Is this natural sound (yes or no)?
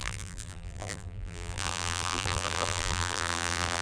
no